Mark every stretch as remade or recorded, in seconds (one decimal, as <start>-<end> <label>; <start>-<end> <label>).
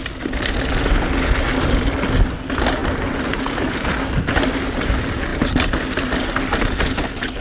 0.0-7.4 recorded